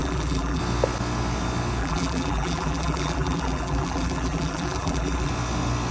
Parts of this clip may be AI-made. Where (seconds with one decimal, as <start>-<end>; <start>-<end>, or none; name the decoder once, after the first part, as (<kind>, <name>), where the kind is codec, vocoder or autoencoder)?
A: 0.0-0.6 (vocoder, BigVGAN v2); 1.8-5.3